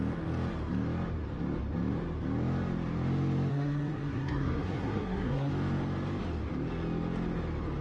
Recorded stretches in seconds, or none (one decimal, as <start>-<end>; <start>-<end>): 0.0-3.5; 5.5-7.8